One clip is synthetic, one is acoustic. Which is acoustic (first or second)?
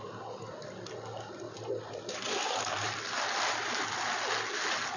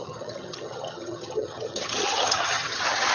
first